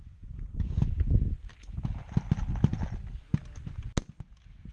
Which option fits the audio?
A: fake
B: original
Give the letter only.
B